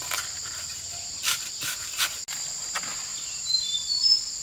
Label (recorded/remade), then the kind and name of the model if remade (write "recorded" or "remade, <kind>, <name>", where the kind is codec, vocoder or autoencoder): recorded